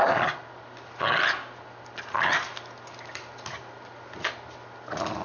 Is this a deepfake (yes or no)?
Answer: no